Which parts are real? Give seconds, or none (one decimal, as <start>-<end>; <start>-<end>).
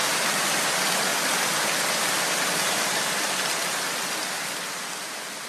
0.0-5.5